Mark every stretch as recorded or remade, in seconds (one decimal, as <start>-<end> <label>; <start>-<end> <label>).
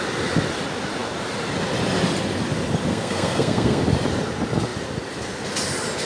0.0-2.9 recorded; 2.9-3.8 remade; 3.8-6.1 recorded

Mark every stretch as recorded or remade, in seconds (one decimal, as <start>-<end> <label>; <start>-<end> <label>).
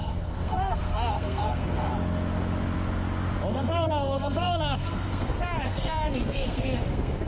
0.0-1.9 remade; 1.9-3.5 recorded; 3.5-7.3 remade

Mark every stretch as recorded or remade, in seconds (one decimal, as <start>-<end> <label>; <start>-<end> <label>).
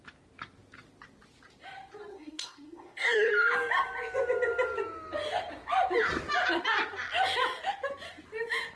0.0-2.1 recorded; 2.1-3.3 remade; 3.3-8.8 recorded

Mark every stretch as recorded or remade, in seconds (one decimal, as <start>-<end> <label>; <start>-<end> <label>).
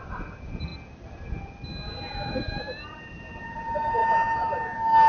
0.0-0.7 remade; 0.7-2.3 recorded; 2.3-4.0 remade; 4.0-5.1 recorded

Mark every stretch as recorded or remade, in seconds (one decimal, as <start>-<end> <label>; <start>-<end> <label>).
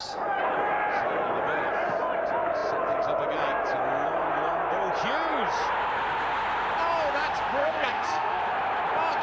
0.0-7.6 recorded; 7.6-8.4 remade; 8.4-9.2 recorded